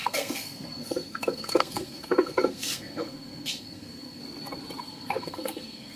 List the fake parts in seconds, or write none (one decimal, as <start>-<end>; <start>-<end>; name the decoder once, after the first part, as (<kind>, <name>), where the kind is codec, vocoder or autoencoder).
0.0-4.2 (codec, SNAC); 4.8-6.0